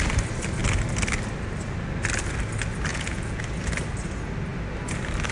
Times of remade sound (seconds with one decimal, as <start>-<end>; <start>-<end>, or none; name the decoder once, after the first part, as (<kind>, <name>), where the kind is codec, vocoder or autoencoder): 2.9-3.4 (vocoder, Vocos)